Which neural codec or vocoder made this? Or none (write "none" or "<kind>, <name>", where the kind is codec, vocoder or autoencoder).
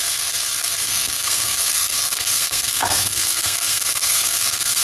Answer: codec, SNAC